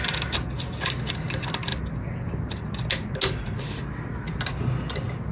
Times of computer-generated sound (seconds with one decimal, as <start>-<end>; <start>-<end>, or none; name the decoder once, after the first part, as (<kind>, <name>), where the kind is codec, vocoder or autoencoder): none